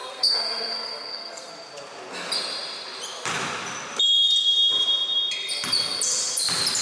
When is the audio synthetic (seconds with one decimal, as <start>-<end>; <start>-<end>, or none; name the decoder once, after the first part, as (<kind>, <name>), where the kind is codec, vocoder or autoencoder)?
0.0-1.5 (codec, SNAC)